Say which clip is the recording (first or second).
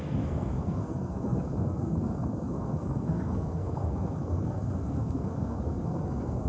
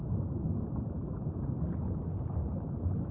second